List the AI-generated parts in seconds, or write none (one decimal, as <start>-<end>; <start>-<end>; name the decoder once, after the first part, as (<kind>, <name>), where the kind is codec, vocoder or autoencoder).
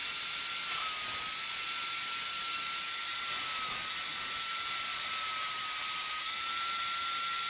none